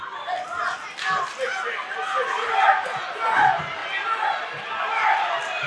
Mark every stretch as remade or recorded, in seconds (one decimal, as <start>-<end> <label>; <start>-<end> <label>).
0.0-5.7 recorded